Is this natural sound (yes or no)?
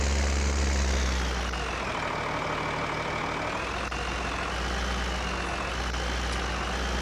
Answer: yes